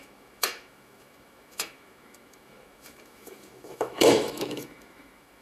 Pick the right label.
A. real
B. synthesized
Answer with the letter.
B